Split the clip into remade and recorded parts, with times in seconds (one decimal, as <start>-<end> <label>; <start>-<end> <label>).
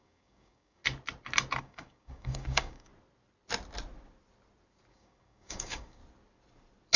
0.0-0.8 remade; 0.8-1.6 recorded; 1.6-2.9 remade; 2.9-4.9 recorded; 4.9-6.0 remade; 6.0-7.0 recorded